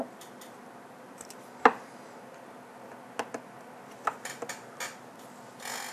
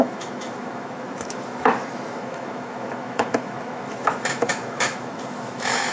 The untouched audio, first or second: first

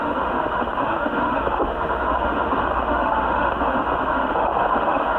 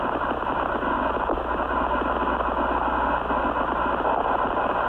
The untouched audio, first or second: second